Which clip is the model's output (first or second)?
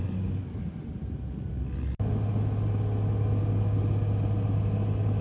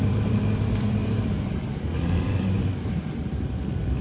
second